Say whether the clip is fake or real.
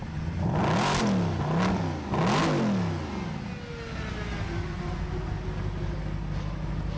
real